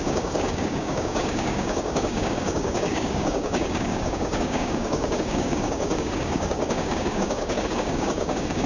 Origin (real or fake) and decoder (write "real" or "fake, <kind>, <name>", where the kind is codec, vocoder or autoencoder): fake, codec, DAC